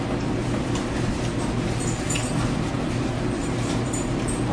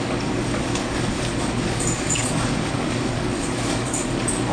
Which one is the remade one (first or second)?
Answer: second